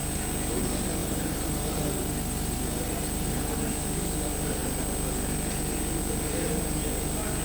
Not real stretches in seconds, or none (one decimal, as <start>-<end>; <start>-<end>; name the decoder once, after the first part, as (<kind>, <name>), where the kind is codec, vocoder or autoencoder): 1.0-3.7 (vocoder, BigVGAN v2)